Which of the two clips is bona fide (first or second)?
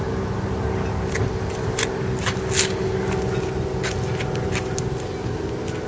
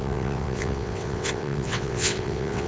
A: first